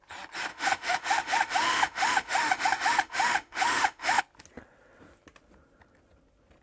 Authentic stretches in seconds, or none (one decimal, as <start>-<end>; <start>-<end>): 0.0-0.5; 4.2-6.6

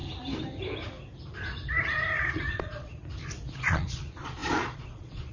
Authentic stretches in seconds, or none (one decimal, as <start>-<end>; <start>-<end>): 0.0-2.3; 2.9-3.6

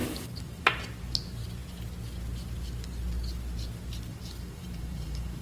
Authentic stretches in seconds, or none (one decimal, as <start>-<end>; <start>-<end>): 0.7-4.1

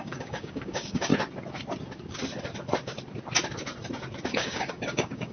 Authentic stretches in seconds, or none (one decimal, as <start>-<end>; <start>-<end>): 1.1-4.3

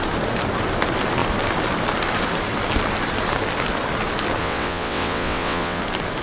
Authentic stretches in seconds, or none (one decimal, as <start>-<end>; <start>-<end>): 0.0-4.4; 5.8-6.2

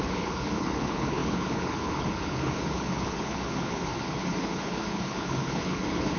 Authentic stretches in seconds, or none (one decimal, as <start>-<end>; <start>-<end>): none

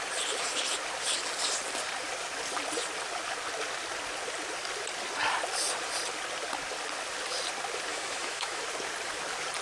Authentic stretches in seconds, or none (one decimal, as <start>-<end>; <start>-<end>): 0.0-7.9; 8.6-9.6

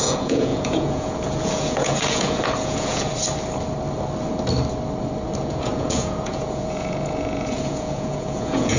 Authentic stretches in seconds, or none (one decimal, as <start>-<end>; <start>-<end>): 3.1-5.4